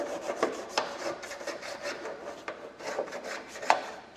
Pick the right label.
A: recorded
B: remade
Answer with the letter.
B